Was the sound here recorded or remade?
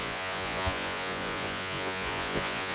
remade